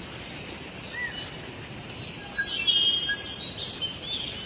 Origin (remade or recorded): recorded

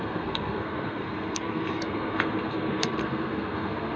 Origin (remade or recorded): remade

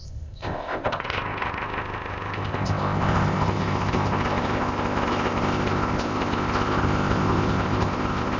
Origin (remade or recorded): remade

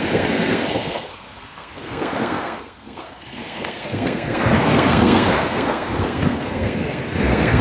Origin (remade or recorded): remade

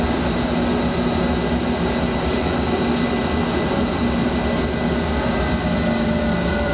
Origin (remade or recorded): recorded